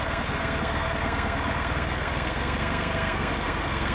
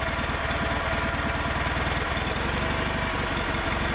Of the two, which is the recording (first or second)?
second